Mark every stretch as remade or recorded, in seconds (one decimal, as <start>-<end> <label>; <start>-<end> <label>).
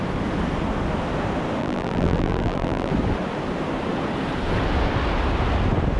0.0-1.6 recorded; 1.6-2.9 remade; 2.9-6.0 recorded